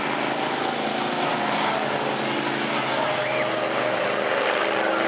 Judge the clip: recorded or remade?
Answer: recorded